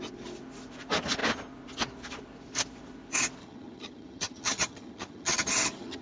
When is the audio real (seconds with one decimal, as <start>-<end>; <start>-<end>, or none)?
0.0-3.4